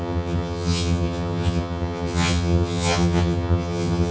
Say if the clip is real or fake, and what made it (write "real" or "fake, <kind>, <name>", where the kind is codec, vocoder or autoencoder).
fake, vocoder, HiFi-GAN